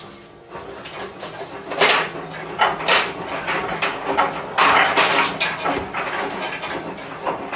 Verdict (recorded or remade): recorded